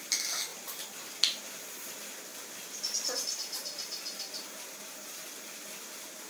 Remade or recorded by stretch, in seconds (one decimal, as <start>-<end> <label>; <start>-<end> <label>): 0.0-0.5 recorded; 0.5-1.1 remade; 1.1-2.3 recorded; 2.3-6.3 remade